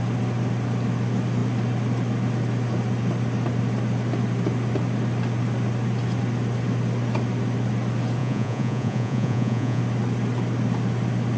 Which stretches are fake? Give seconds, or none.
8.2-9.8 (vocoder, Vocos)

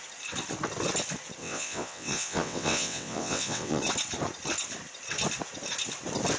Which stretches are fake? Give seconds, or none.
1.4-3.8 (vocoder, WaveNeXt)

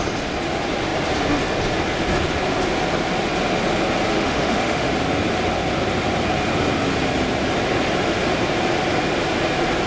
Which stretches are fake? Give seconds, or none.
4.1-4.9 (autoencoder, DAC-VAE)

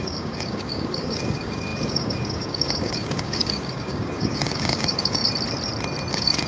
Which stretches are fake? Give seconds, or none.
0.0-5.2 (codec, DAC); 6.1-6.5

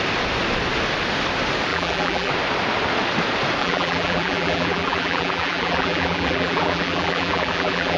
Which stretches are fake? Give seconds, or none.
1.7-2.3 (vocoder, BigVGAN v2); 3.6-8.0

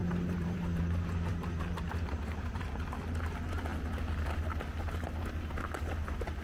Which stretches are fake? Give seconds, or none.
0.0-0.8 (vocoder, BigVGAN v2); 1.3-2.7

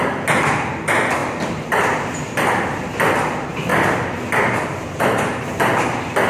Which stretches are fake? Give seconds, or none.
0.0-3.7 (vocoder, BigVGAN v2); 4.4-6.3